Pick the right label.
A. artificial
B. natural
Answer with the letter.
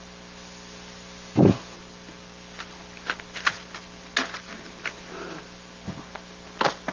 B